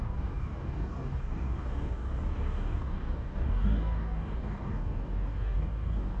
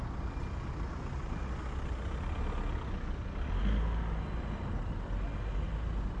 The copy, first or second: first